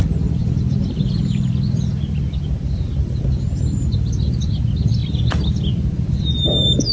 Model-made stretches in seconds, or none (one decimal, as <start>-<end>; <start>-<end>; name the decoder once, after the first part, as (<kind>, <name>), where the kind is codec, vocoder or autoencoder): 0.0-5.0 (vocoder, BigVGAN v2); 5.6-6.9